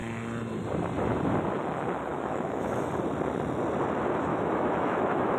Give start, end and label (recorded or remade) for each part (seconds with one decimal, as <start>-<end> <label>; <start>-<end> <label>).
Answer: 0.0-2.1 recorded; 2.1-2.9 remade; 2.9-4.3 recorded; 4.3-5.4 remade